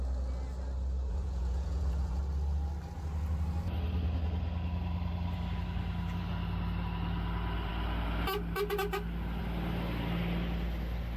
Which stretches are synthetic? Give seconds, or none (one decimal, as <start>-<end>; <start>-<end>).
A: 1.1-2.2